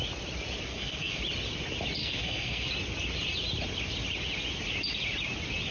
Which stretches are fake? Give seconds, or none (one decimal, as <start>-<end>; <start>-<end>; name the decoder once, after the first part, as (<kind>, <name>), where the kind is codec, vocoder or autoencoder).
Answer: 0.7-1.2 (codec, SNAC); 2.0-2.7